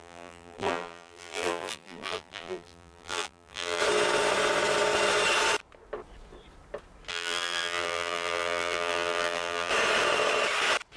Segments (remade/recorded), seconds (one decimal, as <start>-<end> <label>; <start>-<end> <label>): 0.0-3.8 remade; 3.8-7.1 recorded; 7.1-9.7 remade; 9.7-11.0 recorded